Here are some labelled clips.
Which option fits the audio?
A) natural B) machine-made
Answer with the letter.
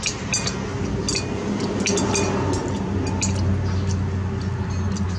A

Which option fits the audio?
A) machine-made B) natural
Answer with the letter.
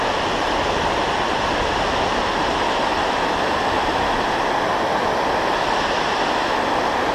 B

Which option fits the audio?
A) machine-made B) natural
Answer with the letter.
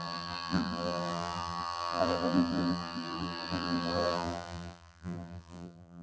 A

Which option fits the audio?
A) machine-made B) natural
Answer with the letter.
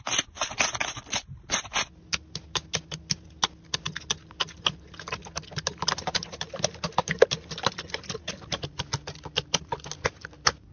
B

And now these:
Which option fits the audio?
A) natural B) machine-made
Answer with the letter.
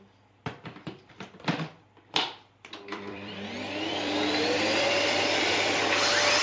B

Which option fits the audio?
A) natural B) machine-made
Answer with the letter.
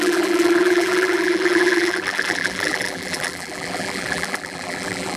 B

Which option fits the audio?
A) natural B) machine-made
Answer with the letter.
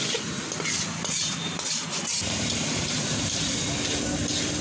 A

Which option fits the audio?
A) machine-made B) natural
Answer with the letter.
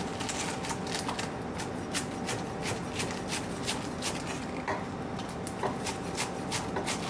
B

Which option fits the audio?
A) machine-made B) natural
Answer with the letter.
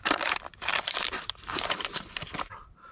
A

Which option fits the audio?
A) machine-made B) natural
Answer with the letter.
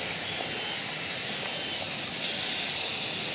B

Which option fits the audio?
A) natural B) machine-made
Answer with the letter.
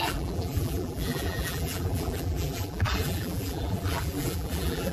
B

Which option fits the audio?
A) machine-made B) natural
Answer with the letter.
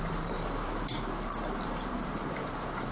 A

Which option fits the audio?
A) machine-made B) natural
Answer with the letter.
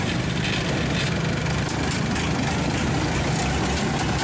B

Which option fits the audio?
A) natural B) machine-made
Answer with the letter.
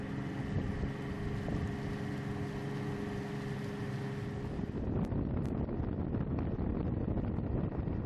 A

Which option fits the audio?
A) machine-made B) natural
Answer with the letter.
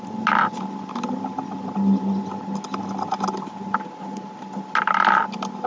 B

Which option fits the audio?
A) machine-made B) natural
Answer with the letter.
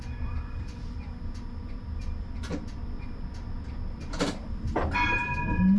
A